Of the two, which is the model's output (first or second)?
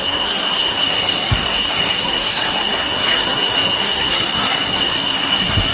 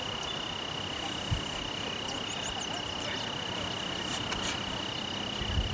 first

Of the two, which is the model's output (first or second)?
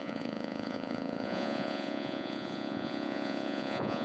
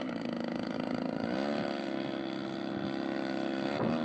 first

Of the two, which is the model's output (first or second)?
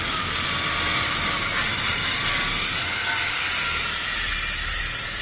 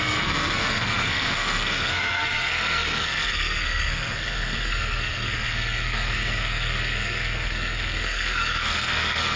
second